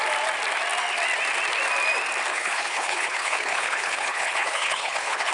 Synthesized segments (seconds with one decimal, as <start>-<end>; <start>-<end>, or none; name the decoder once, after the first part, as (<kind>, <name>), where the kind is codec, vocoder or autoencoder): 2.3-5.3 (codec, HILCodec)